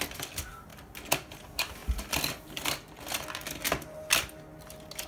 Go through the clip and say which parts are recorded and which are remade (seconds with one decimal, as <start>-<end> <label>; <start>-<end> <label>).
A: 0.0-5.1 recorded